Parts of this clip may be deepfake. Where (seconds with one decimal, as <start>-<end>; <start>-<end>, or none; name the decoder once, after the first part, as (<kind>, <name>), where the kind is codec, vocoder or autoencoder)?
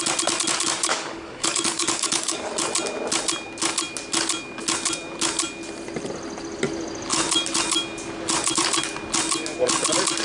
0.8-2.5 (codec, DAC)